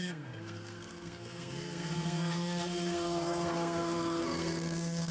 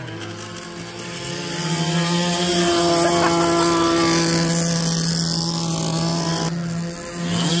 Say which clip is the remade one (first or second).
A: first